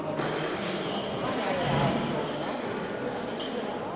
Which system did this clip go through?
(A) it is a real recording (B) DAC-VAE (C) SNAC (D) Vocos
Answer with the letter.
A